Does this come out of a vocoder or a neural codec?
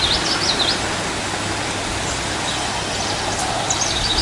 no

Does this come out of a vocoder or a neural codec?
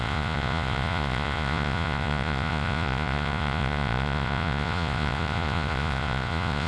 yes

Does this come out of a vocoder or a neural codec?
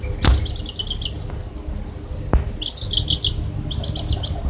no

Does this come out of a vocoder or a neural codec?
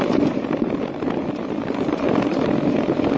no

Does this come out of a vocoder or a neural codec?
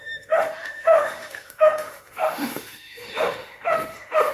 yes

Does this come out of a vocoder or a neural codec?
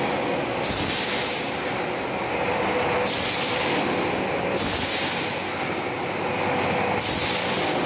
no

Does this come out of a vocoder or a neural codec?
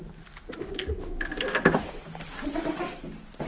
no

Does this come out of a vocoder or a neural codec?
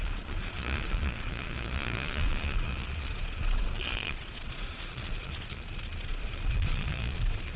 yes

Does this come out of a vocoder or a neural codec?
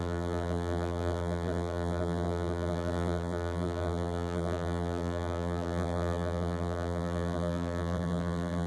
yes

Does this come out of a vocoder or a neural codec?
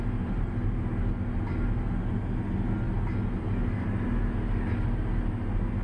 no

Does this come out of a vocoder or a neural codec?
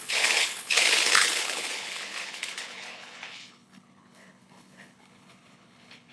yes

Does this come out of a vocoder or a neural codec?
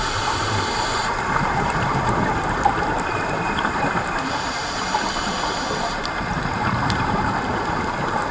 yes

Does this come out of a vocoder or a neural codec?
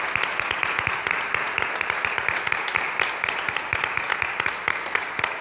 no